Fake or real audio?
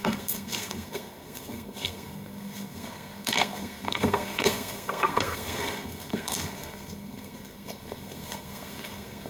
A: fake